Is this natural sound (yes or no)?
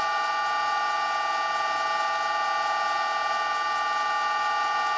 yes